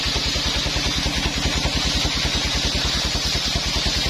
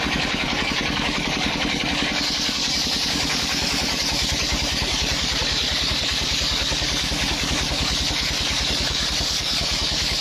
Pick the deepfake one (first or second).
second